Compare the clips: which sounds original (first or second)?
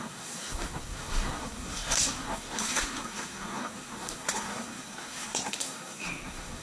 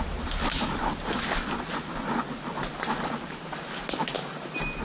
second